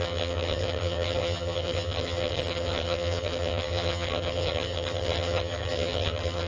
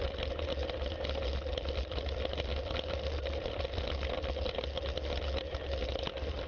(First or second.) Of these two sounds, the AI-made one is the first